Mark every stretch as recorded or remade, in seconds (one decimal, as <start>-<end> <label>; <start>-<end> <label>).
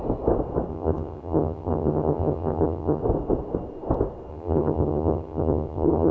0.0-0.7 recorded; 0.7-3.0 remade; 3.0-4.3 recorded; 4.3-6.1 remade